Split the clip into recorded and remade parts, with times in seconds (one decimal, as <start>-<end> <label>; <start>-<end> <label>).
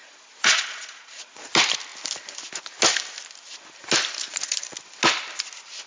0.0-1.5 remade; 1.5-5.9 recorded